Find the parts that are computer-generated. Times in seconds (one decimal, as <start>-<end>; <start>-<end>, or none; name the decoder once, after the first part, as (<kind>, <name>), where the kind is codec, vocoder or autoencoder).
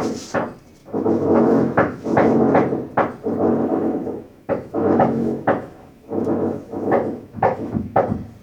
0.8-2.4 (autoencoder, DAC-VAE); 3.7-8.0